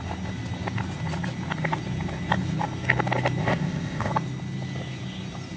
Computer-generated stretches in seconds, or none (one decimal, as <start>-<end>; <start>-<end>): 3.4-4.1